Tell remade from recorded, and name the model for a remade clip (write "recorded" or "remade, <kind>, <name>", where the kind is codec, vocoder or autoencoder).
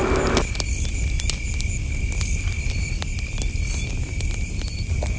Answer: recorded